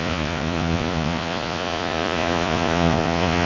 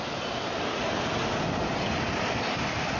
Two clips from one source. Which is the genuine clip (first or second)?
second